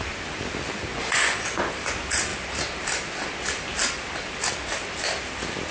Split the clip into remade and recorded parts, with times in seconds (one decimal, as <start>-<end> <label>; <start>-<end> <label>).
0.0-0.9 recorded; 0.9-1.7 remade; 1.7-5.7 recorded